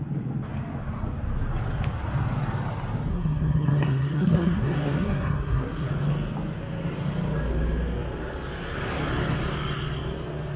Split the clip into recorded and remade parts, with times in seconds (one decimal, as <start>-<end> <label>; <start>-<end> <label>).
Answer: 0.0-3.1 recorded; 3.1-5.9 remade; 5.9-10.6 recorded